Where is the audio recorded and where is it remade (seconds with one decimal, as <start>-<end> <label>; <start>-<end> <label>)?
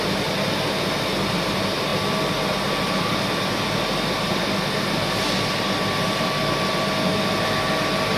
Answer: 0.0-8.2 recorded